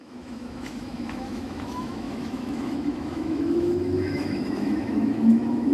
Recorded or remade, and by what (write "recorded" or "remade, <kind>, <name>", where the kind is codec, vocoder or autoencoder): remade, autoencoder, DAC-VAE